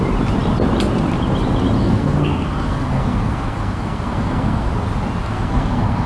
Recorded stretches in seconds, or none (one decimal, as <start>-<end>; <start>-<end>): 0.0-1.8; 4.7-5.2